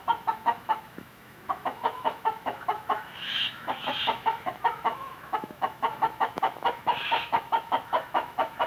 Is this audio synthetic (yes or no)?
yes